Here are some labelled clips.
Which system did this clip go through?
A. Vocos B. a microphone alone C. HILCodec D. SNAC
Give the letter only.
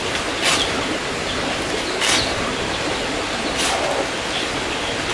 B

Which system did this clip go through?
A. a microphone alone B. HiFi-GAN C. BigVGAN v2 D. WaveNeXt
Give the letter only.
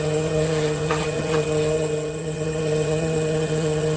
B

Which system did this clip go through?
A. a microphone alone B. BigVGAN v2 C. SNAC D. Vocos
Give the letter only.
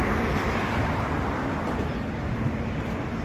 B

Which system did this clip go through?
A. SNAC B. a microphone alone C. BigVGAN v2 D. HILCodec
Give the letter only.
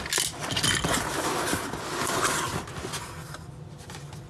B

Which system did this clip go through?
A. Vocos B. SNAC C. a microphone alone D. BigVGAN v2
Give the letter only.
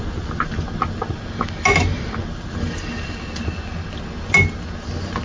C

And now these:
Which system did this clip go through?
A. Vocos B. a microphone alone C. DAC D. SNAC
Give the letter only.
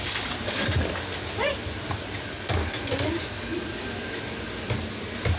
B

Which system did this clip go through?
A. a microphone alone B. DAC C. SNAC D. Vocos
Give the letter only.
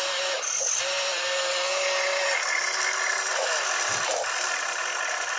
A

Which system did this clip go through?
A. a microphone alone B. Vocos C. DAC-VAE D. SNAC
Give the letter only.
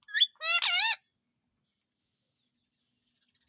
A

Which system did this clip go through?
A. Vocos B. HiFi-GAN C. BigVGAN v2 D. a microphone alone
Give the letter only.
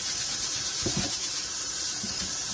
C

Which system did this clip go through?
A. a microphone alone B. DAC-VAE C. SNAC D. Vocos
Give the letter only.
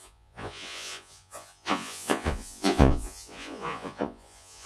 D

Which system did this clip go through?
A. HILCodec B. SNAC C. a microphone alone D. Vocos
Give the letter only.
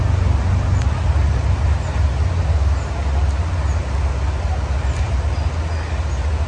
C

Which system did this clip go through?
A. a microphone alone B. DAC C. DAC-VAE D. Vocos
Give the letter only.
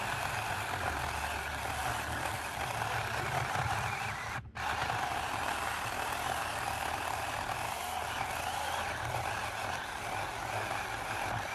A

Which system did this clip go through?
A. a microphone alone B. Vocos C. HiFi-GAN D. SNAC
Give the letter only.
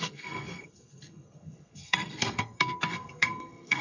D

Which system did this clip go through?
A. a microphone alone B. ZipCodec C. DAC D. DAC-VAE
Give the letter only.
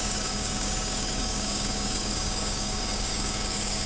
C